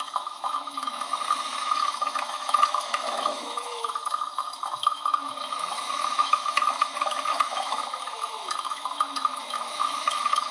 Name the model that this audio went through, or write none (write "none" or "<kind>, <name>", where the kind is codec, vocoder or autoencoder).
autoencoder, DAC-VAE